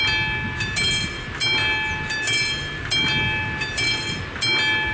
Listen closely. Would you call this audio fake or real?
real